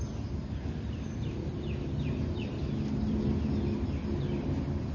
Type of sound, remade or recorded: recorded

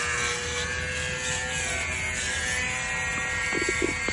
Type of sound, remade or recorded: recorded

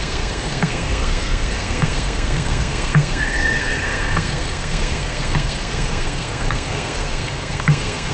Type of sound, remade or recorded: remade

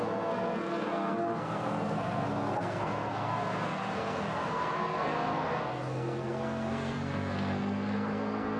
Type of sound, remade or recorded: remade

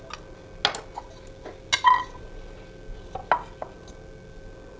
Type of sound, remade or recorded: recorded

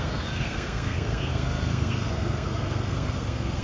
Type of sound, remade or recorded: remade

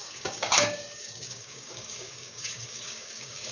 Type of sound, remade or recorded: remade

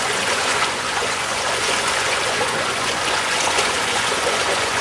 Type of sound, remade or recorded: remade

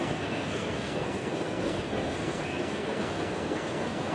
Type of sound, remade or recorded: remade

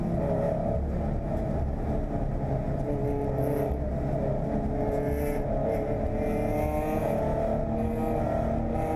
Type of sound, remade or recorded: recorded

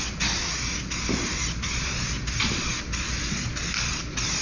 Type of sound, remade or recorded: recorded